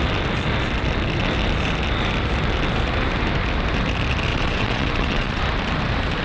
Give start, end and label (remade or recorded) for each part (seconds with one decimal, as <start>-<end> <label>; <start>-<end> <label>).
0.0-4.3 recorded; 4.3-5.4 remade; 5.4-6.2 recorded